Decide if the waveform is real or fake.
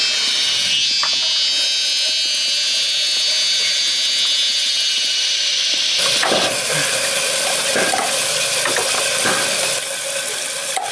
real